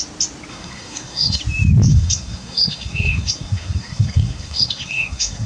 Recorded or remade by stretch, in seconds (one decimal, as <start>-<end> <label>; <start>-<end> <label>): 0.0-0.5 recorded; 0.5-1.4 remade; 1.4-1.9 recorded; 1.9-5.5 remade